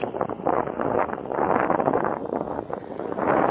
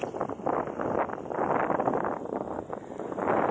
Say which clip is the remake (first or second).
first